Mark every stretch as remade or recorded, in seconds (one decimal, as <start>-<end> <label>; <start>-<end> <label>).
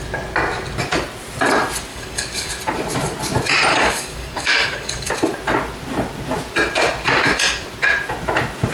0.0-1.9 recorded; 1.9-2.5 remade; 2.5-3.7 recorded; 3.7-5.1 remade; 5.1-8.7 recorded